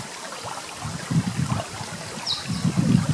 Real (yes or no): yes